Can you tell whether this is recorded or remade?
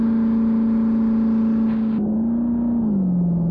recorded